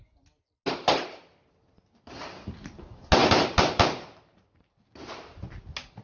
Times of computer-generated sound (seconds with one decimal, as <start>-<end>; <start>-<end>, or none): 3.2-5.5